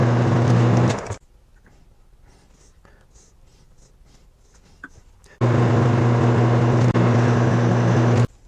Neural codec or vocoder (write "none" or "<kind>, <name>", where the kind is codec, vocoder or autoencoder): none